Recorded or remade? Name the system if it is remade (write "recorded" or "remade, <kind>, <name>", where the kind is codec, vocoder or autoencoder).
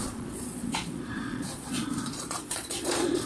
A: remade, vocoder, Vocos